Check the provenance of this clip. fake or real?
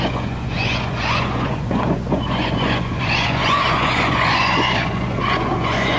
fake